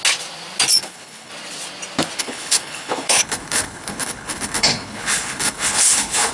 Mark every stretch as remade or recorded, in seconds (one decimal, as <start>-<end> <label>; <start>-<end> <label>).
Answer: 0.0-0.8 recorded; 0.8-1.3 remade; 1.3-2.2 recorded; 2.2-6.3 remade